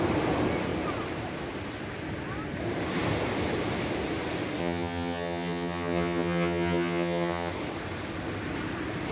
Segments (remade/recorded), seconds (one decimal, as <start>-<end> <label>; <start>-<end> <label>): 0.0-4.6 recorded; 4.6-7.5 remade; 7.5-9.1 recorded